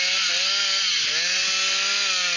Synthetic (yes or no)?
no